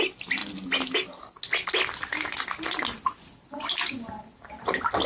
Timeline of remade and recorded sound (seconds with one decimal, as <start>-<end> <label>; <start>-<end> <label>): 0.0-5.1 recorded